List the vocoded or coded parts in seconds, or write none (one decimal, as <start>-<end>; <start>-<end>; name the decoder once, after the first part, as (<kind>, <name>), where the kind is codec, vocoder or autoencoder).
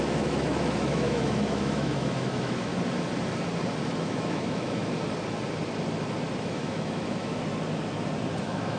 0.0-2.7 (autoencoder, DAC-VAE); 4.0-4.8; 6.4-7.4; 8.4-8.8